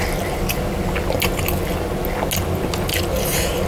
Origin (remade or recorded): recorded